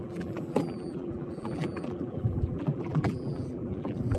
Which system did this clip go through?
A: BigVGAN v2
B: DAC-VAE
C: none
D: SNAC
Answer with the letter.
A